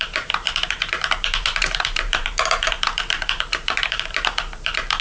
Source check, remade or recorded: remade